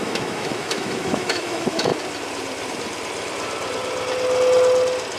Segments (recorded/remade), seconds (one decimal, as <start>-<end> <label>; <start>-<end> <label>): 0.0-1.9 remade; 1.9-5.2 recorded